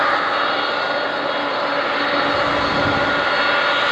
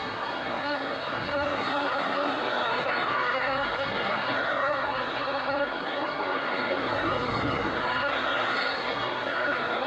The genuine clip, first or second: first